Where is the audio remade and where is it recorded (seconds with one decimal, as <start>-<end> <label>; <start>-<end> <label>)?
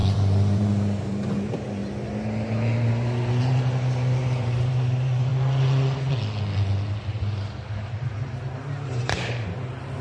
0.0-1.8 remade; 1.8-4.2 recorded; 4.2-5.3 remade; 5.3-7.1 recorded; 7.1-10.0 remade